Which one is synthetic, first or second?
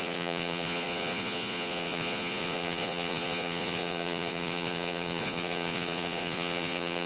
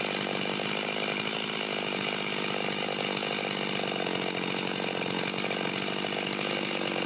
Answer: first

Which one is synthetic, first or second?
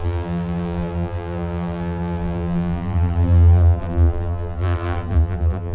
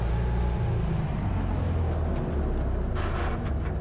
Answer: first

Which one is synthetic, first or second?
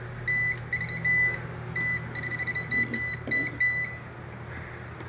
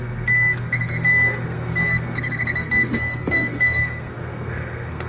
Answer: second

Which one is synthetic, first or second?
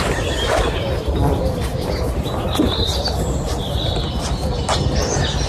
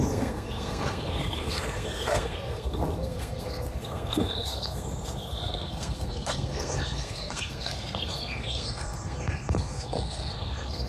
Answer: second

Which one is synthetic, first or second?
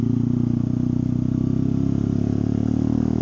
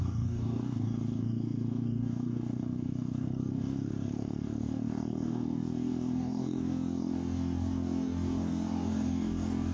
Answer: second